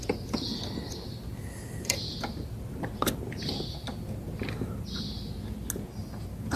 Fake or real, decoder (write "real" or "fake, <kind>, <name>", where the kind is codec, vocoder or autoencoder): real